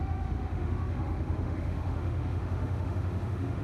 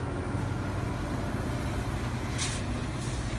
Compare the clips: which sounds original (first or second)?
second